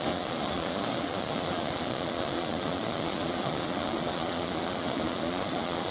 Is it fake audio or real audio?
fake